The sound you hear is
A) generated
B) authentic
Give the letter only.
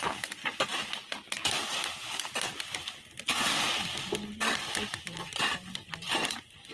B